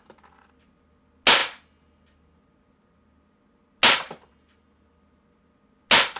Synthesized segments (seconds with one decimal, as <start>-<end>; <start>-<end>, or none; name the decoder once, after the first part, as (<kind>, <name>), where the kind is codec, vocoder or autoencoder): none